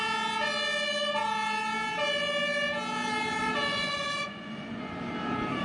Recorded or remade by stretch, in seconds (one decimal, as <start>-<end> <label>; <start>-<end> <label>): 0.0-3.7 recorded; 3.7-4.9 remade; 4.9-5.6 recorded